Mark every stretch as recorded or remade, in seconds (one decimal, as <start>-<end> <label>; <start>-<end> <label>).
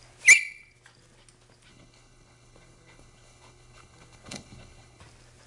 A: 0.0-1.7 recorded; 1.7-5.0 remade; 5.0-5.5 recorded